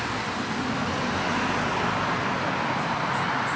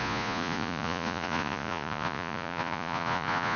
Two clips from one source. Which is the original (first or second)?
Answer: first